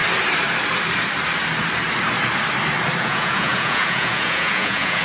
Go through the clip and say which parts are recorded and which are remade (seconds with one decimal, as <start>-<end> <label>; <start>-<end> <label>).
0.0-3.0 recorded; 3.0-5.0 remade